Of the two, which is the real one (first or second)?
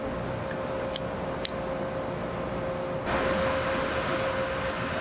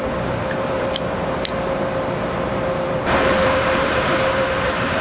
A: first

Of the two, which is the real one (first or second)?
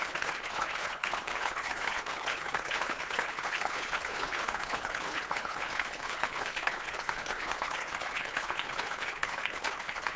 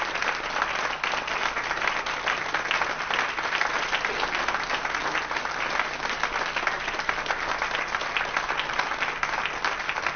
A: second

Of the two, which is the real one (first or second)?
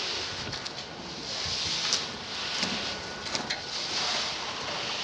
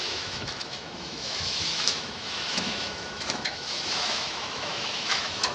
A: first